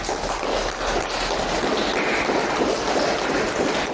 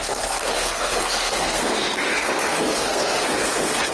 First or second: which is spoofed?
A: second